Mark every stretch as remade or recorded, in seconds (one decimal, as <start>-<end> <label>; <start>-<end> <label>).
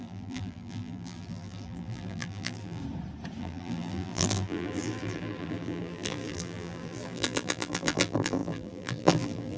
0.0-2.8 remade; 2.8-3.4 recorded; 3.4-9.6 remade